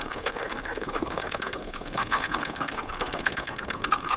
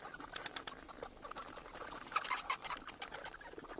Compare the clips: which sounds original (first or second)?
second